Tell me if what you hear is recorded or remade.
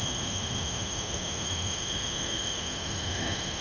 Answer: remade